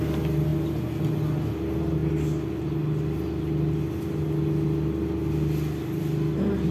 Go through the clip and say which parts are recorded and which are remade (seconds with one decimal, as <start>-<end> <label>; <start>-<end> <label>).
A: 0.0-6.7 recorded